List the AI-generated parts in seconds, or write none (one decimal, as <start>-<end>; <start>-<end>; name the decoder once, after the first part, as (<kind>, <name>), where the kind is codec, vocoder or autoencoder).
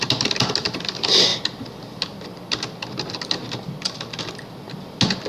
none